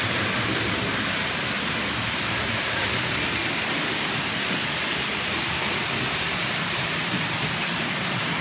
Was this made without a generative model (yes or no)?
no